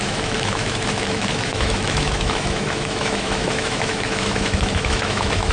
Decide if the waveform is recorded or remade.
remade